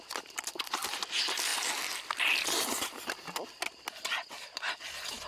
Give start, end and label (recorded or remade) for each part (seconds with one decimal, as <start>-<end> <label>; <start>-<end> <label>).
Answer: 0.0-5.3 recorded